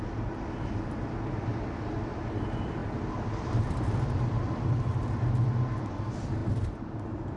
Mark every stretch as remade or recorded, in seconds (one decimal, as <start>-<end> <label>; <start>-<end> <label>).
0.0-7.4 recorded